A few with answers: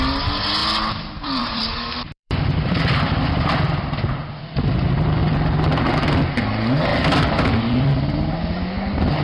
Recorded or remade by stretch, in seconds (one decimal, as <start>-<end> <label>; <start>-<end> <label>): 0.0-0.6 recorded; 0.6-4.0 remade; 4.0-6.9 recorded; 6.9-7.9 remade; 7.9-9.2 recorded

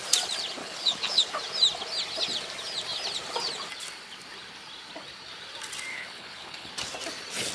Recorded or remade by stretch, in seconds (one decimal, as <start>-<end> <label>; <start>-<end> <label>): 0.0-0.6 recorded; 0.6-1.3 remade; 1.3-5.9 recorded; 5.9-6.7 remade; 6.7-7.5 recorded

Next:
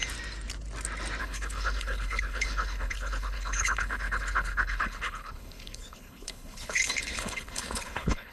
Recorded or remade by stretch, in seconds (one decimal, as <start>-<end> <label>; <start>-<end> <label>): 0.0-1.2 recorded; 1.2-8.3 remade

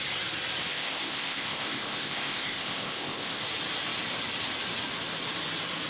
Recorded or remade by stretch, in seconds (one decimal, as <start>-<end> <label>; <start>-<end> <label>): 0.0-0.7 recorded; 0.7-3.4 remade; 3.4-5.9 recorded

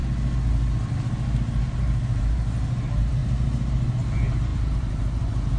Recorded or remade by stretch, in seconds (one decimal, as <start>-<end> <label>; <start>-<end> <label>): 0.0-1.7 recorded; 1.7-3.2 remade; 3.2-4.0 recorded; 4.0-5.6 remade

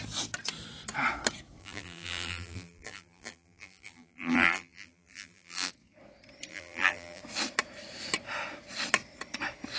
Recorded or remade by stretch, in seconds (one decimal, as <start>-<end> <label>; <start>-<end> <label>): 0.0-1.6 recorded; 1.6-5.7 remade; 5.7-6.5 recorded; 6.5-7.2 remade; 7.2-9.8 recorded